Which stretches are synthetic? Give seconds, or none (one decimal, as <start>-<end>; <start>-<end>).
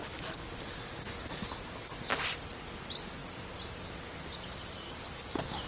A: none